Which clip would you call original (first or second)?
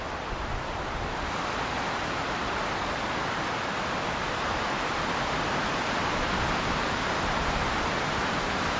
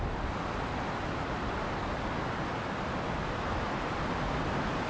second